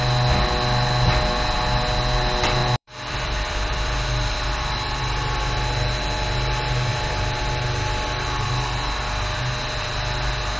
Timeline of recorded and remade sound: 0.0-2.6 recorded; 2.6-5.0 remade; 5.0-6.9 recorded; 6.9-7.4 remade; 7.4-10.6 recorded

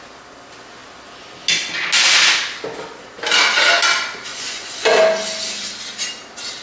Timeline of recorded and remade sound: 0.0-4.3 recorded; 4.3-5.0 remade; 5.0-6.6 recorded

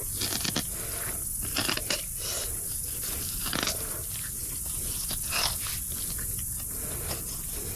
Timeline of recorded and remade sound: 0.0-7.8 recorded

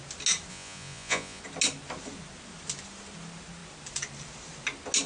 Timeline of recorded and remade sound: 0.0-0.5 recorded; 0.5-1.4 remade; 1.4-5.1 recorded

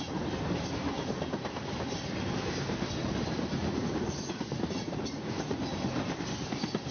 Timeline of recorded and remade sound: 0.0-3.6 recorded; 3.6-5.6 remade; 5.6-6.9 recorded

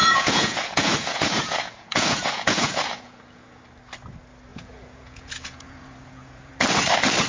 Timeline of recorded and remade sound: 0.0-3.6 remade; 3.6-4.5 recorded; 4.5-6.5 remade; 6.5-7.3 recorded

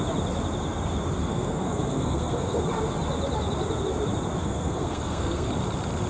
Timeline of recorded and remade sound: 0.0-1.2 recorded; 1.2-2.6 remade; 2.6-4.4 recorded; 4.4-5.5 remade; 5.5-6.1 recorded

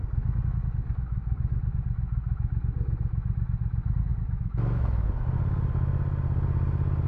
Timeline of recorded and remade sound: 0.0-4.1 recorded; 4.1-5.1 remade; 5.1-7.1 recorded